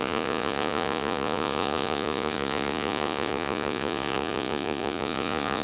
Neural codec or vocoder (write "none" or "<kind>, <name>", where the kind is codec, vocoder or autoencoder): vocoder, Vocos